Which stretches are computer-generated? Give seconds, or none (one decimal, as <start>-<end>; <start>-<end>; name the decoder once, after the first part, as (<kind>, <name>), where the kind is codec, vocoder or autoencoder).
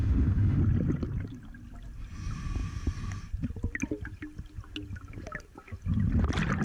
0.0-0.6 (autoencoder, DAC-VAE)